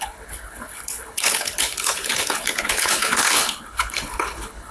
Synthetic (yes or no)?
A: yes